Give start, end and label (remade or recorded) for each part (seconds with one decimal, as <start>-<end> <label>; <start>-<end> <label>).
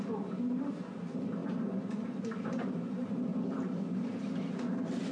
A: 0.0-3.3 remade; 3.3-5.1 recorded